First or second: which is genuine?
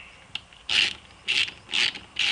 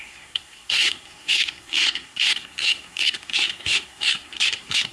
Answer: first